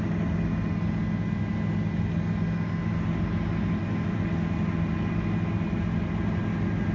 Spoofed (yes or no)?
no